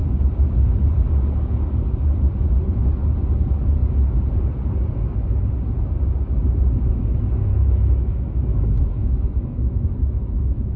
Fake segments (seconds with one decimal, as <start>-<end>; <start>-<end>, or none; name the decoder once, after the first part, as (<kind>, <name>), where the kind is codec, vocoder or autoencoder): 7.5-10.8 (autoencoder, DAC-VAE)